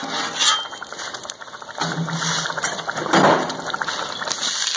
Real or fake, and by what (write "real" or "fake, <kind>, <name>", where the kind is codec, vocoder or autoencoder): real